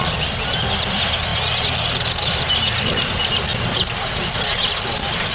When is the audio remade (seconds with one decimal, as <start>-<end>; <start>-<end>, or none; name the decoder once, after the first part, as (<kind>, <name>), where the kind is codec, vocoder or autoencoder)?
none